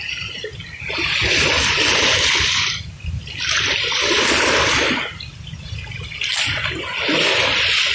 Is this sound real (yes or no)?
yes